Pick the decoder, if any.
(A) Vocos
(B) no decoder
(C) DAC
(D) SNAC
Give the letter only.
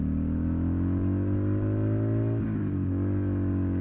B